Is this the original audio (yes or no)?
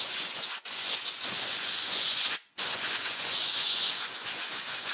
no